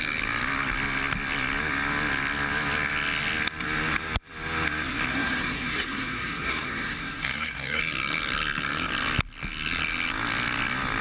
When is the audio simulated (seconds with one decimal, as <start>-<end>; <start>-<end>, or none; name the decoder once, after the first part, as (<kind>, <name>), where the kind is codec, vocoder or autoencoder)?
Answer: 5.1-7.8 (codec, SNAC)